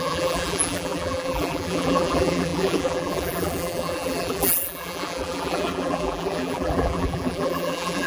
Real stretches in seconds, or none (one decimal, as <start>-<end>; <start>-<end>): none